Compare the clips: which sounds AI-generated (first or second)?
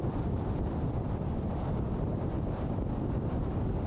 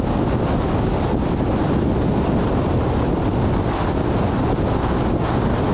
first